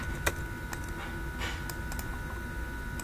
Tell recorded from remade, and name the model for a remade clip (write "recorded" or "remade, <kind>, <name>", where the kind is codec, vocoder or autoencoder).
recorded